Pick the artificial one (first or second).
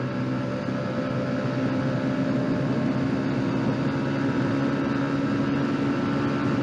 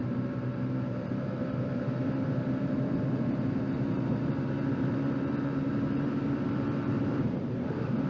second